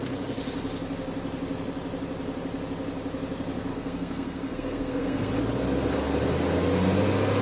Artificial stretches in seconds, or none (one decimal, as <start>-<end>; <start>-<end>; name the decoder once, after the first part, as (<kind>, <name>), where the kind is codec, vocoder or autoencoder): 3.7-5.3 (codec, SNAC)